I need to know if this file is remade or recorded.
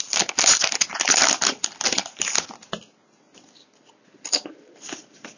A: recorded